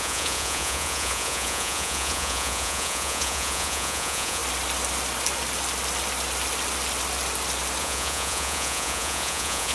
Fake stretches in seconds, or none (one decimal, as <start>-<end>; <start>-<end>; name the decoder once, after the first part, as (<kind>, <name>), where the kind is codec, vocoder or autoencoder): 0.0-4.4 (vocoder, Vocos); 7.8-9.7